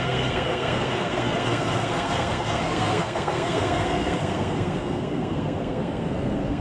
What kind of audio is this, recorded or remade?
remade